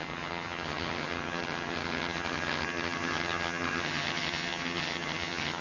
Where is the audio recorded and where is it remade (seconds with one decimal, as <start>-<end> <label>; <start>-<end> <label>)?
0.0-5.6 remade